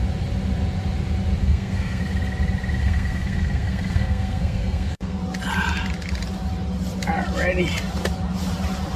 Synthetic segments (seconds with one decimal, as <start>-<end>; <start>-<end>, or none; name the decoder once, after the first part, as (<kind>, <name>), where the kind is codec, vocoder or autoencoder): 1.4-2.0 (codec, SNAC); 2.8-5.2